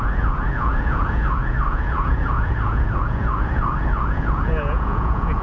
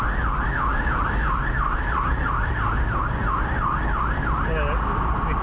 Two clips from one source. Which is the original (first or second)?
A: second